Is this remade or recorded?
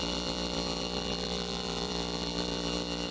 remade